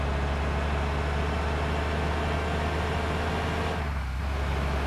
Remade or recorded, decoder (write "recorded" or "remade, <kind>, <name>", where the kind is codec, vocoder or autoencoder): recorded